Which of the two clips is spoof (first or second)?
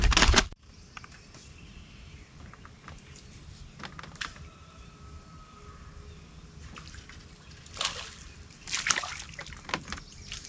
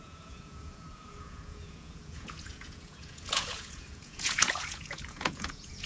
second